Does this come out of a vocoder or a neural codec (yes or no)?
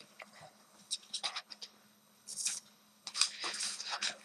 yes